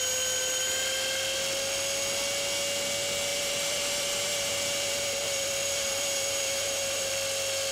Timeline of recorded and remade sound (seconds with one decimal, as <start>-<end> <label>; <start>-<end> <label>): 0.0-3.3 recorded; 3.3-7.1 remade; 7.1-7.7 recorded